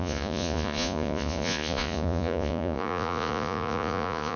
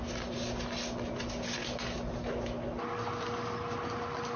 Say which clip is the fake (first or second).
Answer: first